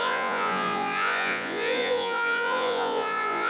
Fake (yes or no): yes